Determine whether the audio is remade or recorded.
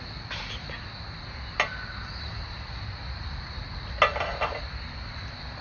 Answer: recorded